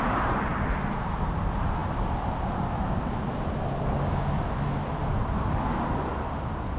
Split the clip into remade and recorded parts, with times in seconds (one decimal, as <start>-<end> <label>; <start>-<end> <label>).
0.0-6.8 recorded